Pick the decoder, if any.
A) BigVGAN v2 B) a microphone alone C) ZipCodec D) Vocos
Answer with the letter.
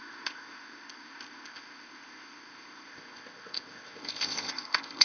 C